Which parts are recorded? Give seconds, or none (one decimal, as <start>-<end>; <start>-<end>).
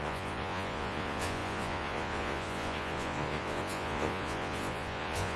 none